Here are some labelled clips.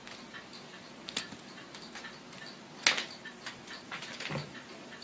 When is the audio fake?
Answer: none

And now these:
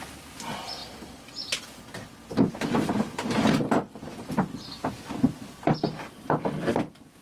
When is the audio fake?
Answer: none

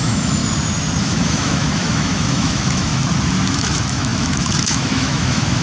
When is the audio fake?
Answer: 0.0-0.4 (autoencoder, DAC-VAE); 1.0-2.9; 3.5-5.6

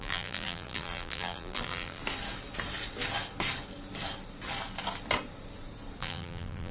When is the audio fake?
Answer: 0.0-2.0 (vocoder, BigVGAN v2); 6.0-6.7

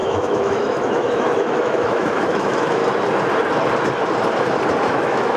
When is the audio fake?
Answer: 0.0-2.8 (autoencoder, DAC-VAE); 4.9-5.4